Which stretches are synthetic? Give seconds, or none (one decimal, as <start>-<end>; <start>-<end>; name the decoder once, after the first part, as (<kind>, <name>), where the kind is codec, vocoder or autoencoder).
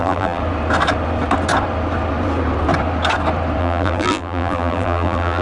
0.0-0.4 (vocoder, BigVGAN v2); 3.6-5.4